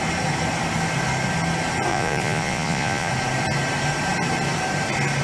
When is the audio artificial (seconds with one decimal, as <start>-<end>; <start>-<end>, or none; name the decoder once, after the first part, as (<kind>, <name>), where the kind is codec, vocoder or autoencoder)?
1.9-3.1 (vocoder, Vocos)